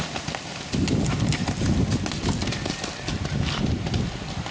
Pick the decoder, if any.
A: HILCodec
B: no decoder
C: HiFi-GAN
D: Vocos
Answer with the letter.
B